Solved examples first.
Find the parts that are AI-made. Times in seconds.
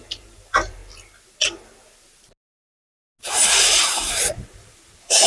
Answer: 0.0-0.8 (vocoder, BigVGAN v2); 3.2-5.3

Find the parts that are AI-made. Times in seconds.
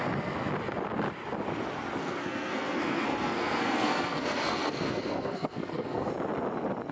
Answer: 2.0-6.1 (codec, SNAC)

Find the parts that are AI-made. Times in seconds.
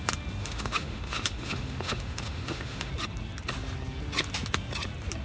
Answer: 0.4-2.9 (autoencoder, DAC-VAE)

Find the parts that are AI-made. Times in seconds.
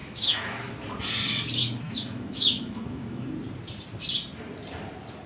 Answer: 0.0-0.7 (autoencoder, DAC-VAE); 1.6-3.3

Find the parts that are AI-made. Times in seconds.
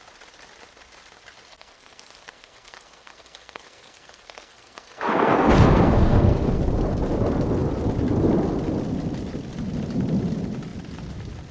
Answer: 1.5-6.6 (codec, SNAC)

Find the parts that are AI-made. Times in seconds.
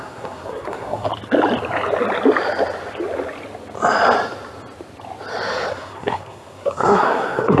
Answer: 0.0-1.1 (codec, SNAC); 5.7-7.6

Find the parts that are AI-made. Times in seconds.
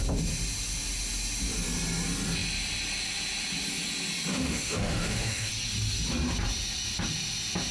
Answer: 4.3-5.5 (autoencoder, DAC-VAE)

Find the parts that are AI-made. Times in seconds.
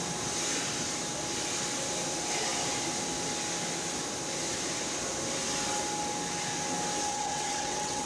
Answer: 7.1-8.1 (vocoder, WaveNeXt)